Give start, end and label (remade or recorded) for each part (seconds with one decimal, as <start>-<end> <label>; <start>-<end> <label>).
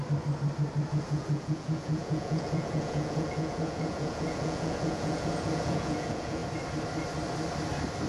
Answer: 0.0-0.9 recorded; 0.9-6.4 remade; 6.4-8.1 recorded